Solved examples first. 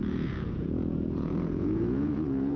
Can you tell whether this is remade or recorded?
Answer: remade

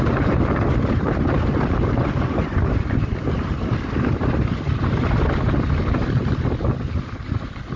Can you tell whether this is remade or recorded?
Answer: recorded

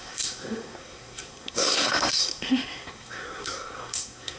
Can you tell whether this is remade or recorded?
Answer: remade